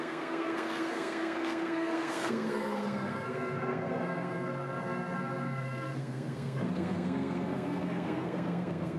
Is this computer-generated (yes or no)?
yes